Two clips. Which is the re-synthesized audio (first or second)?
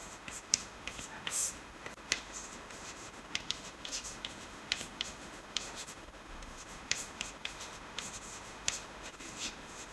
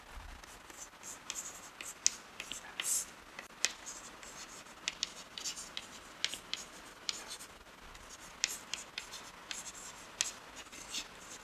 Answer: first